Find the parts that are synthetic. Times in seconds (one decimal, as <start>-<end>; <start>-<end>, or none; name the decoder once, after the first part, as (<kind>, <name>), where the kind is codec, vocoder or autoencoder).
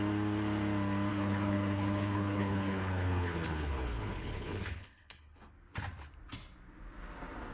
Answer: 1.1-5.5 (codec, HILCodec)